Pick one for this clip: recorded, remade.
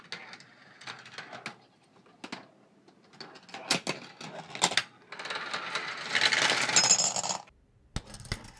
recorded